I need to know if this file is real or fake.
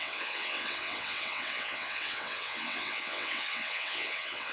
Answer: fake